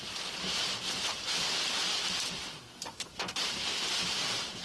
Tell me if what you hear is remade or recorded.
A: recorded